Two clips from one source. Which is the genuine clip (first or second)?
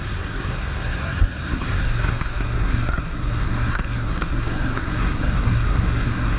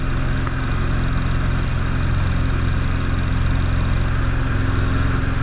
second